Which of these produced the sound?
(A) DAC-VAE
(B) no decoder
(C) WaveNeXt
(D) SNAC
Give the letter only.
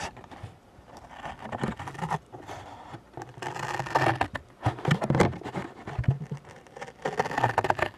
B